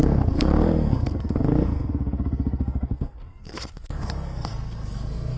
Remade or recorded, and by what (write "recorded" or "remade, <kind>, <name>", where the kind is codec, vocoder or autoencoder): remade, codec, SNAC